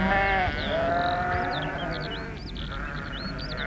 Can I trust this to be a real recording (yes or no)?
yes